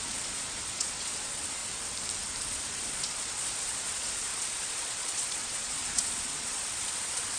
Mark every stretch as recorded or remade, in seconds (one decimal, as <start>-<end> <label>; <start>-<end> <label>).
0.0-1.6 remade; 1.6-2.5 recorded; 2.5-7.4 remade